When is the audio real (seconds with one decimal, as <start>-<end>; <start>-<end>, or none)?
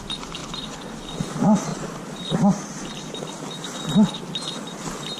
0.0-1.7; 2.2-5.2